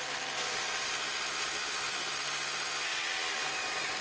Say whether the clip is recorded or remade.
recorded